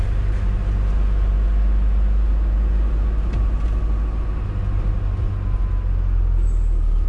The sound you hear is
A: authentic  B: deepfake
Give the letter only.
A